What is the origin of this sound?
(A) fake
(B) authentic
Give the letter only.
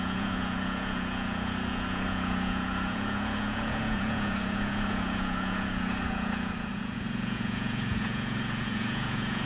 A